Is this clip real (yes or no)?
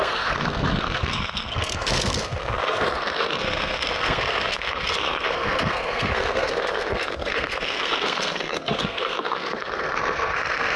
no